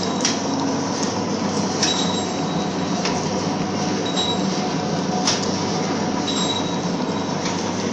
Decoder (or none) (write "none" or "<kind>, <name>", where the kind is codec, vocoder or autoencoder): none